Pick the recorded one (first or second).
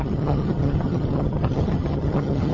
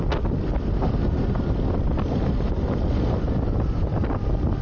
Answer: second